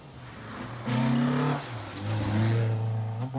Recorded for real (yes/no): yes